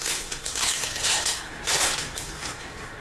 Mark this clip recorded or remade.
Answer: remade